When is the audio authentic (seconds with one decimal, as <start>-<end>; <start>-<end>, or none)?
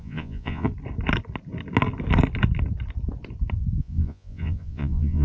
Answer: 0.7-3.8